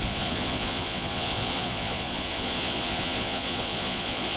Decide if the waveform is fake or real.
fake